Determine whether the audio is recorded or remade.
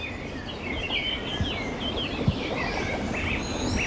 recorded